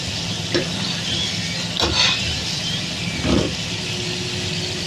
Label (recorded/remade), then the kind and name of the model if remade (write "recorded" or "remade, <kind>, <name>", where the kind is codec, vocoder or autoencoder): recorded